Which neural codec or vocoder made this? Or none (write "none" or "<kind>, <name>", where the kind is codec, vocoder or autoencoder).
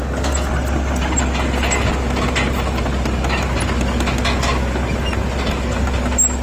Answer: none